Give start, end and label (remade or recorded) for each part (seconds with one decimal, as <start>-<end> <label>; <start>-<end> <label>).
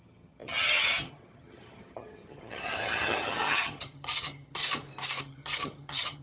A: 0.0-4.6 remade; 4.6-5.2 recorded; 5.2-6.2 remade